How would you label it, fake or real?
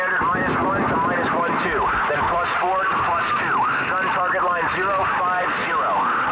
real